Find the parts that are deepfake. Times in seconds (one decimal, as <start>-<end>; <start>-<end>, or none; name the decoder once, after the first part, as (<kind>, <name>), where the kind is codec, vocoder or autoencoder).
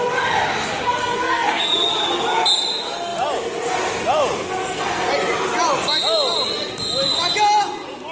1.0-1.6 (codec, SNAC); 4.6-5.1